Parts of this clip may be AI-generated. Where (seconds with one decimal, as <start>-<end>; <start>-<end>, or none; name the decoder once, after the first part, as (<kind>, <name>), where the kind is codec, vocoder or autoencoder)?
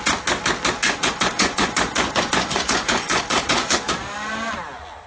0.8-3.9 (vocoder, Vocos)